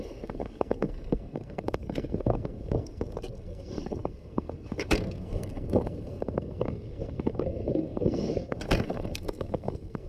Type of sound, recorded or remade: remade